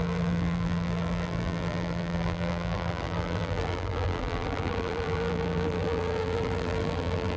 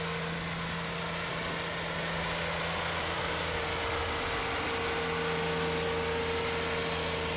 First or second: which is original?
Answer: second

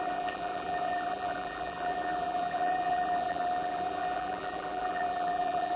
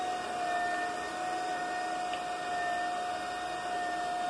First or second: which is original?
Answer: second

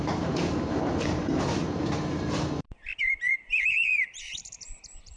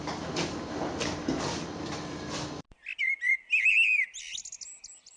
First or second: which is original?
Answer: second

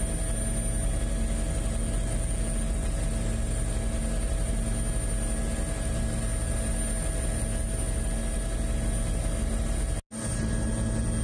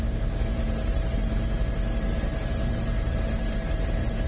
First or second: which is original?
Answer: first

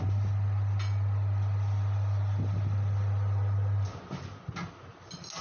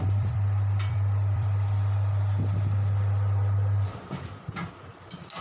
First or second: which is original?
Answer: first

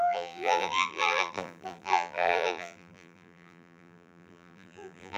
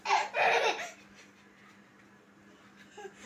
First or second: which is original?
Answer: second